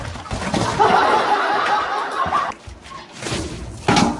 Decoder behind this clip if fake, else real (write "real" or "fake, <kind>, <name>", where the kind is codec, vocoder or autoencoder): real